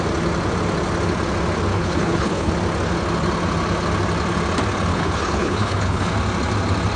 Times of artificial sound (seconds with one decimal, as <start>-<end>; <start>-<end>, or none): 1.7-2.5; 4.9-6.1